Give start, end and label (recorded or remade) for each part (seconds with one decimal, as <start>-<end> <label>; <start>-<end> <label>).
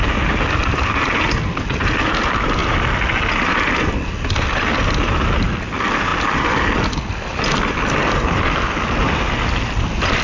0.0-10.2 recorded